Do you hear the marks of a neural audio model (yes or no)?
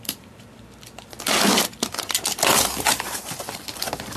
yes